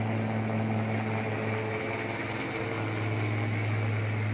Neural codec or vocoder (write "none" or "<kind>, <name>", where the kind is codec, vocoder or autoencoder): none